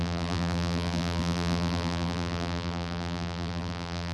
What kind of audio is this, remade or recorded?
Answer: remade